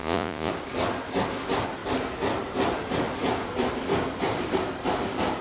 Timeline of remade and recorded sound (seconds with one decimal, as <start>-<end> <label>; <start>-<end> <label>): 0.0-0.5 remade; 0.5-5.4 recorded